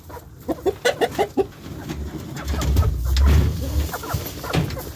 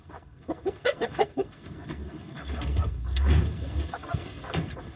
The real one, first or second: first